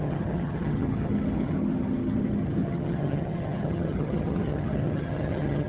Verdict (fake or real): fake